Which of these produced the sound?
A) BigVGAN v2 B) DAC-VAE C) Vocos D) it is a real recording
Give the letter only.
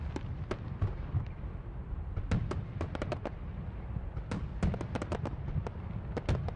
D